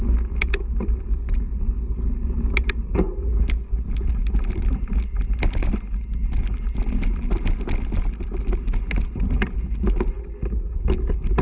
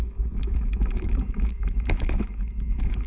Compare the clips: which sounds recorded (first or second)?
first